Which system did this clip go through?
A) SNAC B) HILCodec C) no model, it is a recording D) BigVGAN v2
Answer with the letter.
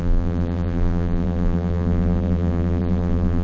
D